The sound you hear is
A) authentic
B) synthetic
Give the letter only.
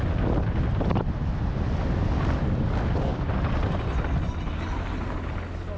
A